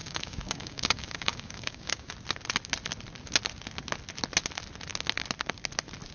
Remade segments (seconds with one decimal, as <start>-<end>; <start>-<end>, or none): 0.0-2.1